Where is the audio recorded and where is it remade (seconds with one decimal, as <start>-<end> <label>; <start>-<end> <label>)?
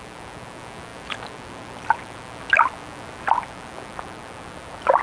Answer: 0.0-5.0 recorded